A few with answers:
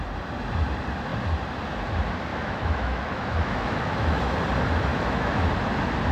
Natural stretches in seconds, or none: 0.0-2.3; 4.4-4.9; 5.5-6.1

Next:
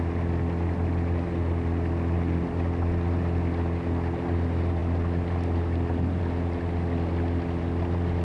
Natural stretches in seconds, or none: 0.0-8.2

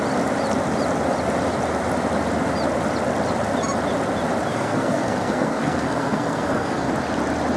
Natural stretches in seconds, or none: 0.0-4.5; 6.9-7.6